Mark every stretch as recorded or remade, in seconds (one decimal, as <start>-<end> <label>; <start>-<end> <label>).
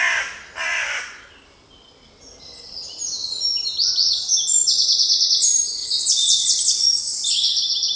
0.0-0.7 recorded; 0.7-1.2 remade; 1.2-5.8 recorded; 5.8-7.3 remade; 7.3-8.0 recorded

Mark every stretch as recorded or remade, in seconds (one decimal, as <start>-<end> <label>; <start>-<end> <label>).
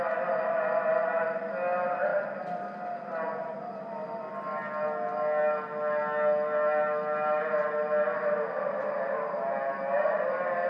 0.0-10.7 recorded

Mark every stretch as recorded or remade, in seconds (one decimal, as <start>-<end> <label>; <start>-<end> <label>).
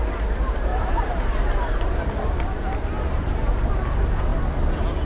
0.0-0.7 recorded; 0.7-3.7 remade; 3.7-5.0 recorded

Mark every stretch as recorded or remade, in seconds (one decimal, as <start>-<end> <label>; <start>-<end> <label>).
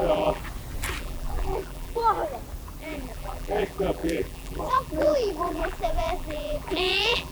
0.0-0.4 remade; 0.4-1.0 recorded; 1.0-2.0 remade; 2.0-2.8 recorded; 2.8-7.3 remade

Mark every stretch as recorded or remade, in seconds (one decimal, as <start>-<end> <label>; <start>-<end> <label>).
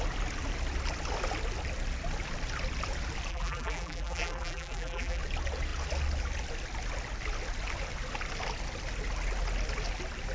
0.0-3.3 recorded; 3.3-5.2 remade; 5.2-10.3 recorded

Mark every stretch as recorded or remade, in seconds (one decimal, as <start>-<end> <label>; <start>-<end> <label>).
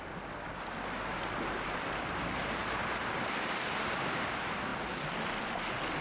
0.0-2.4 recorded; 2.4-3.2 remade; 3.2-6.0 recorded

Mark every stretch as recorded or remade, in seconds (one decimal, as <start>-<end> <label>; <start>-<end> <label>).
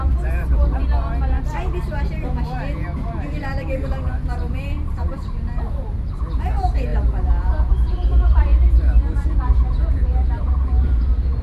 0.0-0.8 remade; 0.8-1.5 recorded; 1.5-11.4 remade